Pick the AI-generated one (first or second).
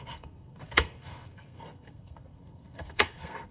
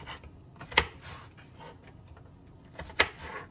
first